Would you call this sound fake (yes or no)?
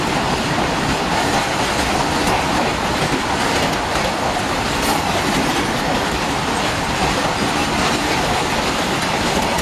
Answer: no